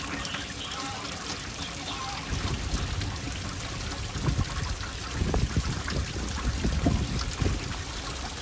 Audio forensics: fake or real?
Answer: real